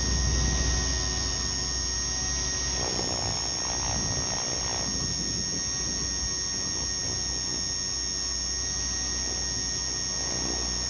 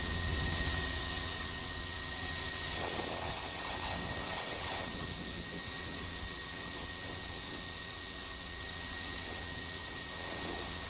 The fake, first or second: second